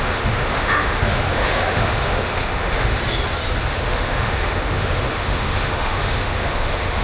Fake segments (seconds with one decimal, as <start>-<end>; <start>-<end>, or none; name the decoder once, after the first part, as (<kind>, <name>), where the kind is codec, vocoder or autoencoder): 0.0-3.0 (autoencoder, DAC-VAE); 3.6-7.0